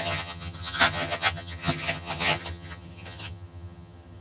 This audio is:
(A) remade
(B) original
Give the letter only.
A